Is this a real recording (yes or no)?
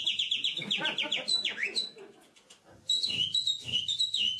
yes